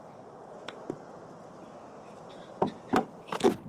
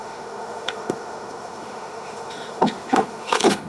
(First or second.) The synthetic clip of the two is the second